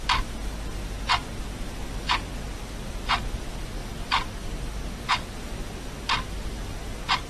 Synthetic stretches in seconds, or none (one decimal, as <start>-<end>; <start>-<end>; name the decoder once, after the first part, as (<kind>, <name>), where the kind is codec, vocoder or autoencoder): none